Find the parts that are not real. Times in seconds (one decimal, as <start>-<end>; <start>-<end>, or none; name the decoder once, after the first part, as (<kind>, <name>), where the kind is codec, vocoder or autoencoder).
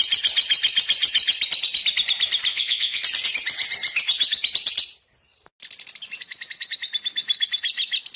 2.5-3.0 (vocoder, Vocos)